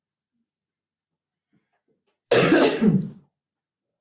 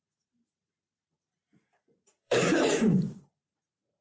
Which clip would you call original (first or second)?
first